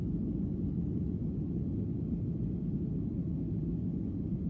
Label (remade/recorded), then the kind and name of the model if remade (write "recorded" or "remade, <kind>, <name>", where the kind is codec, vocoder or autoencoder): recorded